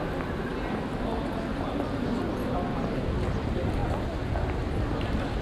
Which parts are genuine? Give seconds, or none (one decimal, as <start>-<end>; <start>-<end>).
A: 0.0-5.4